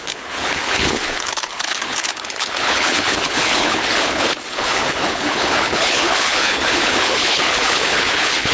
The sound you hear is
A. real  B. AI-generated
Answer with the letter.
B